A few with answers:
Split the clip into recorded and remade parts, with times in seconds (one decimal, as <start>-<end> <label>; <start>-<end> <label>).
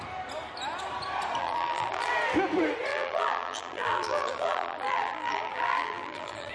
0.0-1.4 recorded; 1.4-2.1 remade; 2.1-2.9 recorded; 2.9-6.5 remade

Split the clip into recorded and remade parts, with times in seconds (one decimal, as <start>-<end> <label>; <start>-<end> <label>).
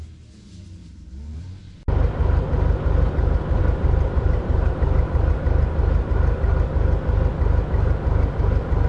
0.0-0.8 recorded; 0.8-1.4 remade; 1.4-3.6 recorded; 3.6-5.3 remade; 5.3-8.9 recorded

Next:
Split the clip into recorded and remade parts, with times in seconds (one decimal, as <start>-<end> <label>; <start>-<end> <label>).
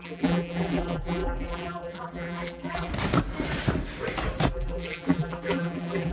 0.0-2.9 remade; 2.9-4.5 recorded; 4.5-6.1 remade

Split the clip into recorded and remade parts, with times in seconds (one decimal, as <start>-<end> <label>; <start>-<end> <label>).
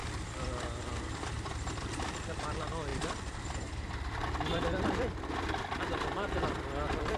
0.0-7.2 remade